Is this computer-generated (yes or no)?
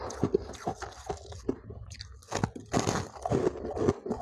no